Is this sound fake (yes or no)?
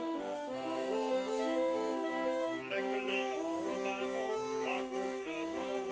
yes